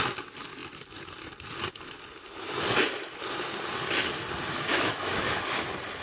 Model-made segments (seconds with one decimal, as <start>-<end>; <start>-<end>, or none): 4.7-5.3

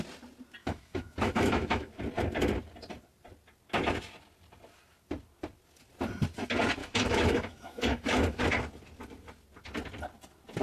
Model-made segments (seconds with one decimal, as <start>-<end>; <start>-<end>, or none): 0.6-1.9; 6.8-8.4

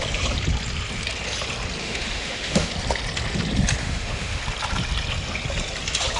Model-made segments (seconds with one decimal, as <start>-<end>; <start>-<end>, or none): 1.8-2.7; 3.8-4.4